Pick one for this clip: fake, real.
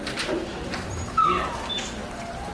real